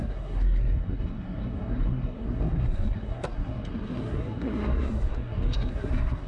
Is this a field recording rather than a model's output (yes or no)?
no